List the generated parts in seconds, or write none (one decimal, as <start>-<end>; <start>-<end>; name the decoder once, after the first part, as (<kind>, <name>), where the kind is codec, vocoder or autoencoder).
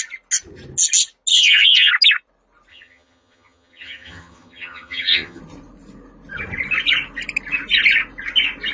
1.3-1.9 (vocoder, HiFi-GAN); 2.7-5.4